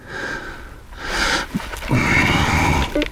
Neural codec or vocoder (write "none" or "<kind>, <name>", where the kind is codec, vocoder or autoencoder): none